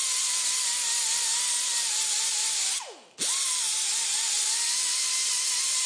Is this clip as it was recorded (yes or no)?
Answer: yes